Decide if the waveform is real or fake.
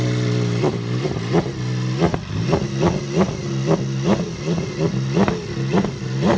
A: real